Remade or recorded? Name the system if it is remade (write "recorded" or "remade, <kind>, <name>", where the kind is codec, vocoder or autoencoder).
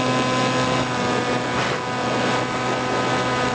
recorded